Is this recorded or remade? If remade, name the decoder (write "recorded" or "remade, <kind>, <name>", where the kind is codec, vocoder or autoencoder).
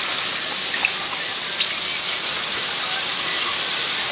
recorded